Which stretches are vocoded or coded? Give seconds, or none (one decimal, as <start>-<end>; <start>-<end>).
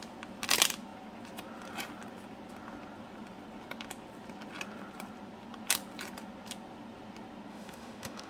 7.5-8.3